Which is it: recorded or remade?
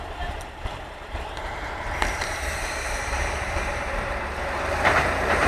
remade